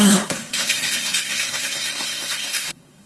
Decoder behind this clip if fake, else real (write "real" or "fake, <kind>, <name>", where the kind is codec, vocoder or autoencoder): fake, codec, SNAC